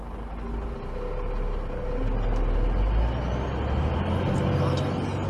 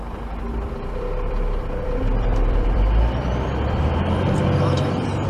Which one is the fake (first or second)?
second